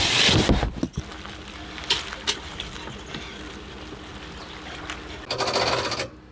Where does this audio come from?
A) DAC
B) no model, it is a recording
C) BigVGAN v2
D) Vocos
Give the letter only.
B